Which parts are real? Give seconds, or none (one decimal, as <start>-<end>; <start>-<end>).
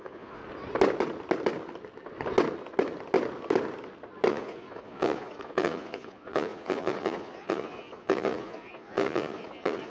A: 0.4-4.3